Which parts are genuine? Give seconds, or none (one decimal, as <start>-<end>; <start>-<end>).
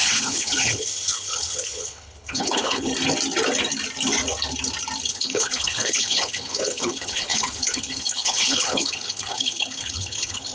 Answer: 2.9-5.1